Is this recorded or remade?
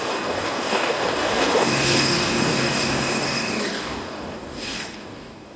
remade